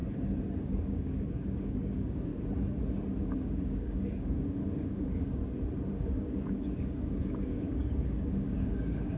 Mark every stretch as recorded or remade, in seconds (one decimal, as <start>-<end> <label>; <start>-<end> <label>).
0.0-0.6 recorded; 0.6-2.3 remade; 2.3-3.2 recorded; 3.2-5.4 remade; 5.4-5.9 recorded; 5.9-9.2 remade